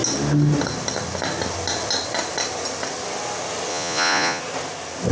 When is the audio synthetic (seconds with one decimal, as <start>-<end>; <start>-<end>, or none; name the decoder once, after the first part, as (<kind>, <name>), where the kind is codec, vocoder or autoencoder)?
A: 3.7-4.4 (vocoder, Vocos)